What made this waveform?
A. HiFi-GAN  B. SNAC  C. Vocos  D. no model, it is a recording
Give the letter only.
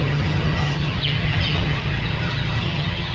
A